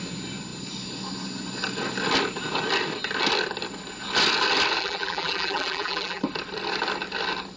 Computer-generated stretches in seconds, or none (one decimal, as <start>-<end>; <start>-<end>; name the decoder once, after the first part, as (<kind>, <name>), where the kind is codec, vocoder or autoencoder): 4.8-6.2 (vocoder, BigVGAN v2)